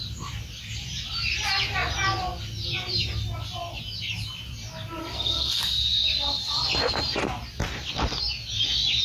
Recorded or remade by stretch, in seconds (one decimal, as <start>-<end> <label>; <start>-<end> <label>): 0.0-5.0 recorded; 5.0-5.6 remade; 5.6-9.0 recorded